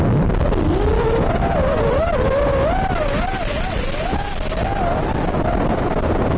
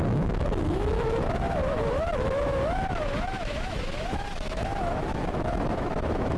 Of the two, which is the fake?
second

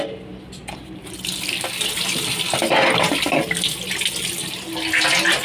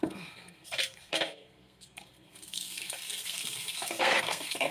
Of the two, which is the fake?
second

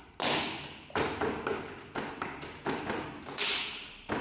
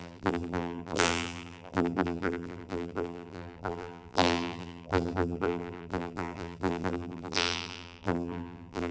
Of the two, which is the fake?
second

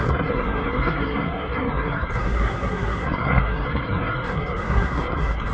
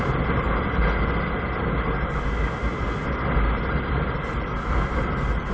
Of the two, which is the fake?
first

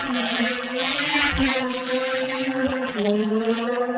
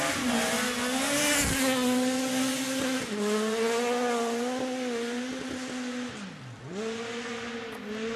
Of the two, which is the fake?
first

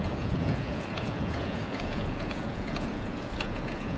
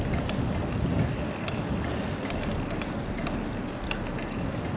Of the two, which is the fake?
first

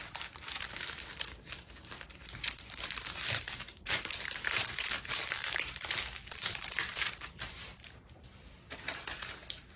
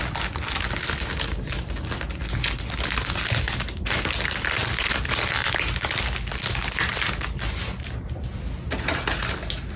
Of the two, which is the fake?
first